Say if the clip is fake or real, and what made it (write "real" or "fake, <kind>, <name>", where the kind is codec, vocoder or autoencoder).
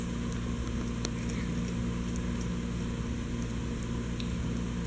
real